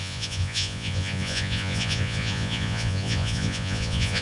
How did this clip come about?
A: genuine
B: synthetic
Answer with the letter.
B